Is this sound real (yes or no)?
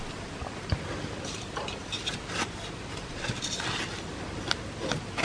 yes